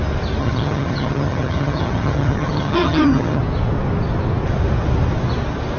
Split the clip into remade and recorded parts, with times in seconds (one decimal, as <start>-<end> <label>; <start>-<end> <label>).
0.0-0.4 recorded; 0.4-3.4 remade; 3.4-5.8 recorded